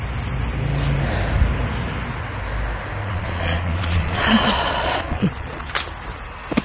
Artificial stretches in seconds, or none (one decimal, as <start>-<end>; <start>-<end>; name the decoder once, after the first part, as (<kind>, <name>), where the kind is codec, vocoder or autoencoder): 3.0-5.7 (vocoder, Vocos)